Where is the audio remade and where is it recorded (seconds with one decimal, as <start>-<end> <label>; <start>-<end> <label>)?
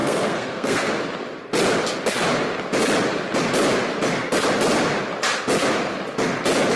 0.0-0.9 remade; 0.9-6.8 recorded